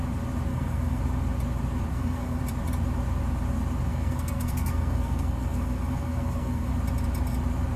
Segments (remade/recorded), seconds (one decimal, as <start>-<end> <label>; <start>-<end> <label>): 0.0-0.5 recorded; 0.5-1.0 remade; 1.0-1.9 recorded; 1.9-2.4 remade; 2.4-3.9 recorded; 3.9-6.7 remade; 6.7-7.8 recorded